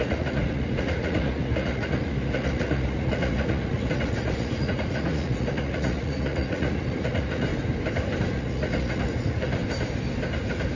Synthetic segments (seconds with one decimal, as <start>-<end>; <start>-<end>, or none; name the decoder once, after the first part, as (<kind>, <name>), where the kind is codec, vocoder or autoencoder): 0.0-7.5 (vocoder, Vocos); 8.2-9.6